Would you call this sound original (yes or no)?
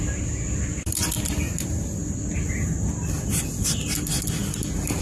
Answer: yes